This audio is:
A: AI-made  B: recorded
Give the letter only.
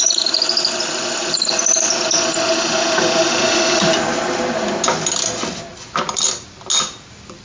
B